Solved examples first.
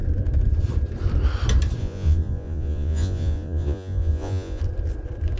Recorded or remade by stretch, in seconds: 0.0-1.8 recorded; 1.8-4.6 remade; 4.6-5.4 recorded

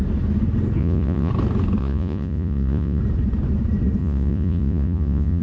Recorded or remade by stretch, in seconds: 0.0-0.8 recorded; 0.8-1.3 remade; 1.3-1.8 recorded; 1.8-3.0 remade; 3.0-4.0 recorded; 4.0-5.4 remade